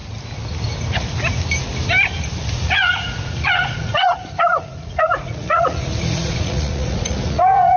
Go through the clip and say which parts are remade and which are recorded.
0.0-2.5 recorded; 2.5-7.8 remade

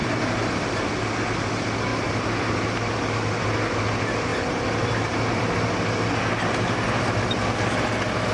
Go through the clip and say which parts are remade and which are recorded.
0.0-0.9 remade; 0.9-1.9 recorded; 1.9-2.8 remade; 2.8-4.3 recorded; 4.3-5.5 remade; 5.5-8.3 recorded